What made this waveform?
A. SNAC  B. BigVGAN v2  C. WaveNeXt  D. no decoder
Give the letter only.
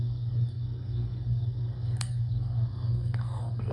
A